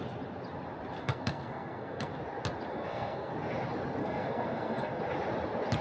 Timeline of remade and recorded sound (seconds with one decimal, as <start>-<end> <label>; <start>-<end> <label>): 0.0-1.0 recorded; 1.0-2.1 remade; 2.1-2.7 recorded; 2.7-3.3 remade; 3.3-4.0 recorded; 4.0-5.0 remade; 5.0-5.8 recorded